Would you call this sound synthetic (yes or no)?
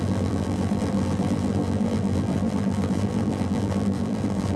yes